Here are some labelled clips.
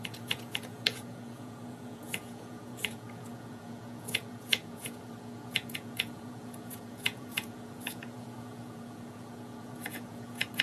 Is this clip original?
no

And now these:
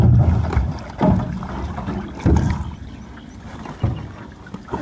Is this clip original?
yes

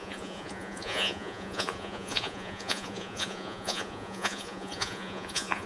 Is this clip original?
no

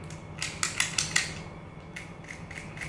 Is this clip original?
yes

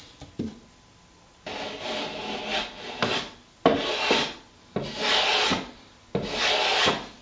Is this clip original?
yes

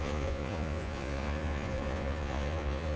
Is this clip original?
no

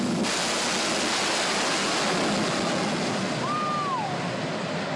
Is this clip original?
yes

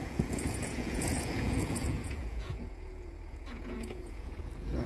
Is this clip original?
no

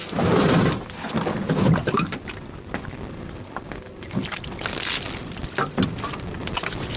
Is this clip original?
yes